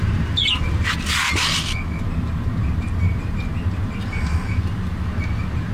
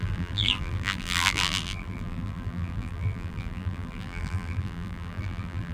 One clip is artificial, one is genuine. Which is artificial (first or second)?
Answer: second